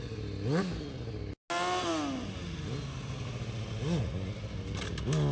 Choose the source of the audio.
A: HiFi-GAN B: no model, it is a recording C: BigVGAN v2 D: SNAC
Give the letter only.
B